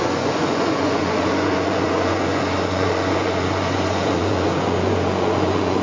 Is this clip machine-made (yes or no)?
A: yes